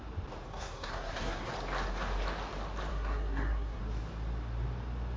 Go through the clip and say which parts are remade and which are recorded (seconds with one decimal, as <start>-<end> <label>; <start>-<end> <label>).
0.0-0.5 recorded; 0.5-1.5 remade; 1.5-2.9 recorded; 2.9-3.8 remade; 3.8-5.2 recorded